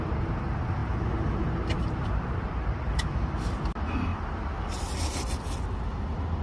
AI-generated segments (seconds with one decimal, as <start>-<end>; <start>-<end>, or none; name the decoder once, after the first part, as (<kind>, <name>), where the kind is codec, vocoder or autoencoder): none